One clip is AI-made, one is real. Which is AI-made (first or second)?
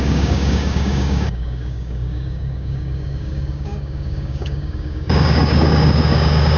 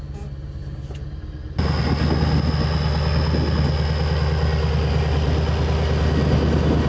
first